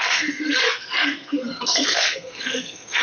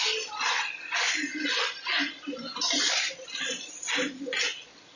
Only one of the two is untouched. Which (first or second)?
second